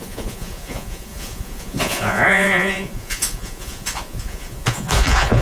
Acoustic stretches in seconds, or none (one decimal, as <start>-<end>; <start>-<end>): none